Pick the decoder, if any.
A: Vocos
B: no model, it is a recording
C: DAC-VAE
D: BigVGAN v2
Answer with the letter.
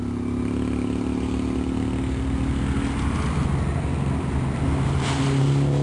B